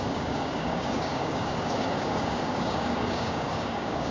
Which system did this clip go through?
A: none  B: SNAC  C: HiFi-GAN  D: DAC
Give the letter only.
D